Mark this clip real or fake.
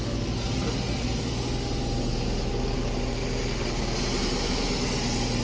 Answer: real